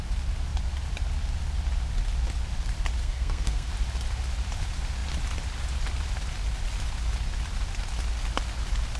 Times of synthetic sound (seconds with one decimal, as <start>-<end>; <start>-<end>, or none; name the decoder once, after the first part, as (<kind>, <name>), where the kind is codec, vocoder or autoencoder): 3.0-3.7 (codec, SNAC)